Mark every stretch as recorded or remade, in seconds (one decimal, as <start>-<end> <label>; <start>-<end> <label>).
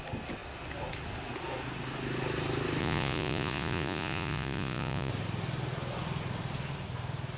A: 0.0-2.8 recorded; 2.8-5.1 remade; 5.1-7.4 recorded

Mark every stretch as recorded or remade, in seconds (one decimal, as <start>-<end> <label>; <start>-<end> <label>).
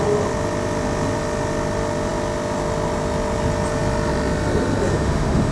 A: 0.0-4.9 recorded; 4.9-5.5 remade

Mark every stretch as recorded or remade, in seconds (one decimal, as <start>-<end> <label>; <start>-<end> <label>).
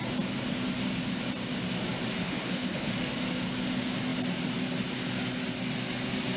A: 0.0-2.2 recorded; 2.2-2.9 remade; 2.9-6.4 recorded